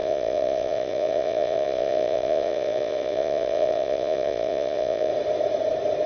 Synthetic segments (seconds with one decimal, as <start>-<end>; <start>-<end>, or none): 0.0-5.1